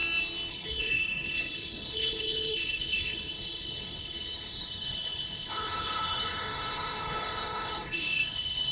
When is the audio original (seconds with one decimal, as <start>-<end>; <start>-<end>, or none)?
0.0-0.5